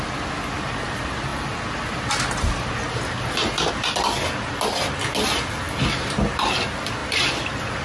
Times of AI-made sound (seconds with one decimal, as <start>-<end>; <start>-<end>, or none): none